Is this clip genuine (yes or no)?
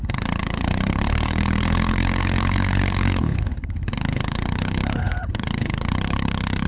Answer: no